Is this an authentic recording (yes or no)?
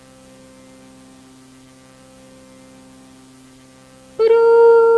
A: yes